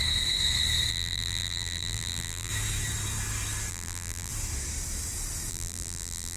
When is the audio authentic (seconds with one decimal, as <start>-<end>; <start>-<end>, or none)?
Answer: 0.0-0.9; 2.5-3.7; 4.3-5.5